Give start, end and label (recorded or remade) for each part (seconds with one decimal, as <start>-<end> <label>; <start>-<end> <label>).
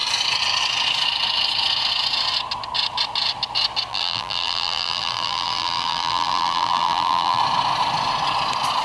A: 0.0-3.9 recorded; 3.9-7.4 remade; 7.4-8.8 recorded